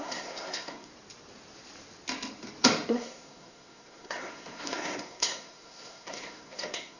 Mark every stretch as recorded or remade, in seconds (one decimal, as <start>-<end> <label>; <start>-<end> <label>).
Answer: 0.0-0.9 remade; 0.9-2.9 recorded; 2.9-7.0 remade